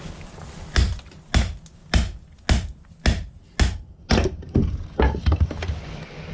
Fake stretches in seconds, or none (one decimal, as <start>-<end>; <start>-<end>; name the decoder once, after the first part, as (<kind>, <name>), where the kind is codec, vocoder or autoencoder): none